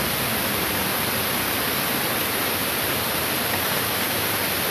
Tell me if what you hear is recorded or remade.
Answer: recorded